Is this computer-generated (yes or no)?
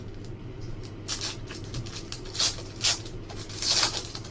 no